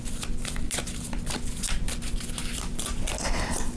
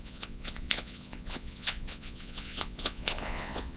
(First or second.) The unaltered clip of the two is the first